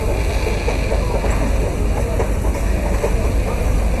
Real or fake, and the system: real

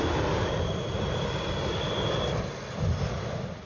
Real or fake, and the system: real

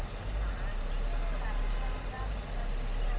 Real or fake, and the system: real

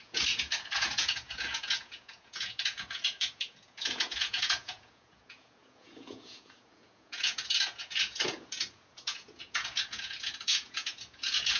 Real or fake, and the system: fake, vocoder, Vocos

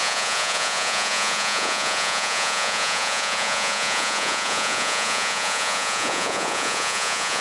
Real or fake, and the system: fake, vocoder, Vocos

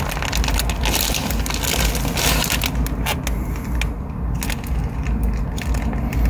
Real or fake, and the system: real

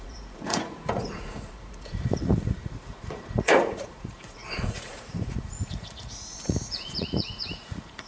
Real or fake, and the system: fake, vocoder, Vocos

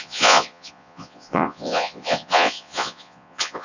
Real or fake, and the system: fake, vocoder, Vocos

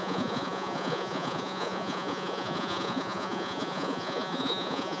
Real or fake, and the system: fake, vocoder, Vocos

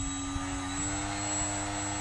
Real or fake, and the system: real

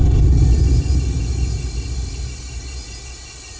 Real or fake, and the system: real